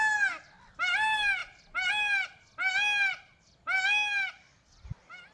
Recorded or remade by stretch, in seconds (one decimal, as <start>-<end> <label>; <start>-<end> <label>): 0.0-5.3 recorded

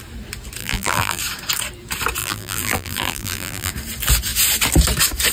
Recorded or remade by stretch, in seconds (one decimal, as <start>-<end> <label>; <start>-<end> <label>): 0.0-0.6 recorded; 0.6-1.2 remade; 1.2-2.2 recorded; 2.2-3.7 remade; 3.7-5.3 recorded

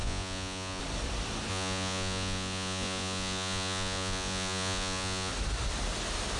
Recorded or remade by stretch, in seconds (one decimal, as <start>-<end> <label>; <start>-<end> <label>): 0.0-0.8 remade; 0.8-1.5 recorded; 1.5-5.3 remade; 5.3-6.4 recorded

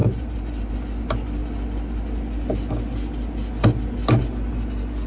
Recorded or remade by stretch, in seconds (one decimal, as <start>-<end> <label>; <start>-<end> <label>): 0.0-0.7 remade; 0.7-5.1 recorded

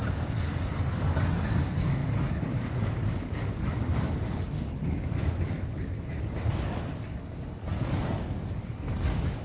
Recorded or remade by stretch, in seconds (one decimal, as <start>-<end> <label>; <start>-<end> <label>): 0.0-9.4 remade

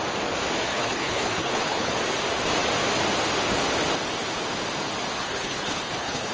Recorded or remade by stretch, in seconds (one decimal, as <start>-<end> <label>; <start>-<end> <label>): 0.0-0.7 recorded; 0.7-1.9 remade; 1.9-5.2 recorded; 5.2-6.3 remade

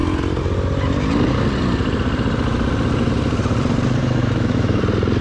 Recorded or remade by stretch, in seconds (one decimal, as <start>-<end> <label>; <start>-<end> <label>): 0.0-4.0 recorded; 4.0-4.8 remade; 4.8-5.2 recorded

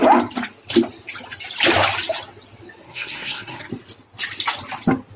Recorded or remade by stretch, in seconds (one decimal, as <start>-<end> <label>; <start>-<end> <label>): 0.0-2.8 recorded; 2.8-3.7 remade; 3.7-5.2 recorded